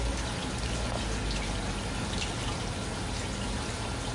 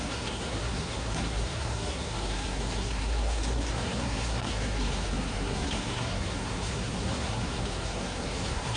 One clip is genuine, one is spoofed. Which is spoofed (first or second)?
second